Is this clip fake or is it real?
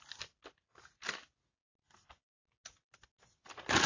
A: real